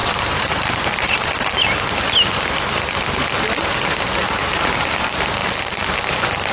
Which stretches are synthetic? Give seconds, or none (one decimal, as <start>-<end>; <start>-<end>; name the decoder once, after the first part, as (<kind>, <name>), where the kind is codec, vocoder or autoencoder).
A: 0.0-1.6 (vocoder, BigVGAN v2)

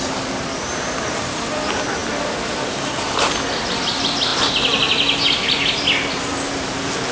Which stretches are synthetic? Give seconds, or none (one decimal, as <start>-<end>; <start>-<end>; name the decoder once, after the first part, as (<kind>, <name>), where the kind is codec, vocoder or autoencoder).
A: none

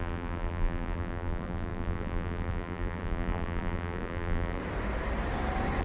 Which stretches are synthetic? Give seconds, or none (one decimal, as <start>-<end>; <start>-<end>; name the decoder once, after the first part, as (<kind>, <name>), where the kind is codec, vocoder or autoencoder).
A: 0.0-4.6 (vocoder, BigVGAN v2)

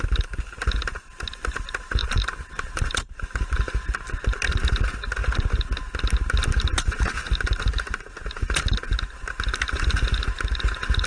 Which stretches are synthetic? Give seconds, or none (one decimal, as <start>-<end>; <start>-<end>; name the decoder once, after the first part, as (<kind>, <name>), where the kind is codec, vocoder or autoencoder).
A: 2.0-3.8 (vocoder, BigVGAN v2)

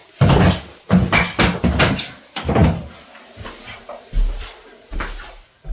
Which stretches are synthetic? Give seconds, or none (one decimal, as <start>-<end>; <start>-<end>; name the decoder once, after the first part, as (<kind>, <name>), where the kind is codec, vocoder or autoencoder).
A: 1.8-2.6 (vocoder, BigVGAN v2); 3.7-5.7

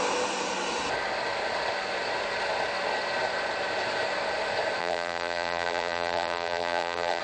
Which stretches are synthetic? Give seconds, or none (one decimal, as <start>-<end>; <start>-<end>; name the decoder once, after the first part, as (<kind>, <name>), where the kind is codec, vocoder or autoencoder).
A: 4.8-7.2 (vocoder, BigVGAN v2)